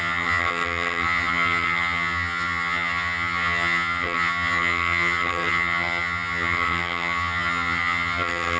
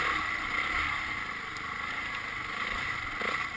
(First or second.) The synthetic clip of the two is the first